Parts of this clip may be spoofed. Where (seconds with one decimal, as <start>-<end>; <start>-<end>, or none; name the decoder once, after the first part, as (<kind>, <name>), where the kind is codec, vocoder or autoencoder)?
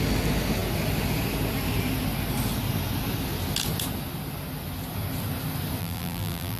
5.8-6.6 (vocoder, BigVGAN v2)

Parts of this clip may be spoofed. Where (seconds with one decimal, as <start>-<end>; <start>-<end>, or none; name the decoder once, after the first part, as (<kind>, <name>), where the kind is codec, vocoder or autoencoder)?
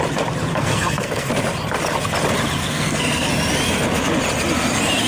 0.5-1.3 (codec, SNAC); 2.6-3.3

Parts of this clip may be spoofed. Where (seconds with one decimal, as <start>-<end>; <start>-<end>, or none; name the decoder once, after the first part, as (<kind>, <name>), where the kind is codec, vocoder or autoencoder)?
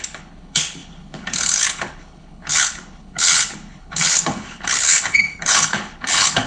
0.0-6.5 (codec, HILCodec)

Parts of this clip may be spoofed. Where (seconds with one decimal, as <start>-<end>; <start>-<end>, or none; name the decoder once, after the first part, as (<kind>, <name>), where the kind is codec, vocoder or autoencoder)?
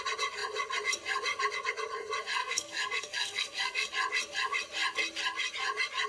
2.4-3.9 (codec, SNAC)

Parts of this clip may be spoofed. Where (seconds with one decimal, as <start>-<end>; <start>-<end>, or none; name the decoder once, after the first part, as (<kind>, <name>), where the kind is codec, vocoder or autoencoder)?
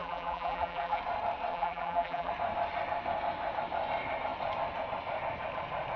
0.0-1.0 (vocoder, BigVGAN v2); 1.5-2.3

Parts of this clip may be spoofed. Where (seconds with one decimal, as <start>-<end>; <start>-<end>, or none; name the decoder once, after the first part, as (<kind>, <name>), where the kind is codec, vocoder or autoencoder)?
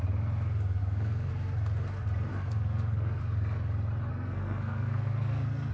0.8-1.3 (codec, SNAC); 2.3-3.2; 4.1-5.7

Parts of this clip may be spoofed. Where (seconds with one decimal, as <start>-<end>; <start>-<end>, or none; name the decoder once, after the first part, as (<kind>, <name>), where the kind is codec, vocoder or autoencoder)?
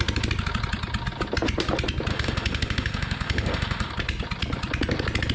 2.1-3.9 (autoencoder, DAC-VAE)